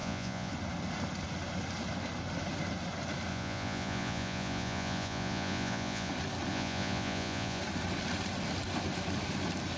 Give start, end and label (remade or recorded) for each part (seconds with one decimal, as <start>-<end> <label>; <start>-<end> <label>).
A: 0.0-0.5 remade; 0.5-3.3 recorded; 3.3-6.1 remade; 6.1-6.5 recorded; 6.5-7.6 remade; 7.6-9.8 recorded